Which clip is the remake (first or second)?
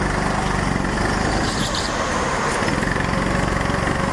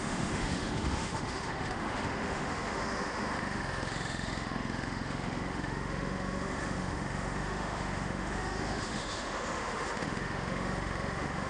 second